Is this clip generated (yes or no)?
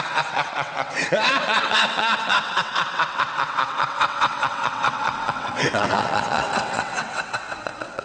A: yes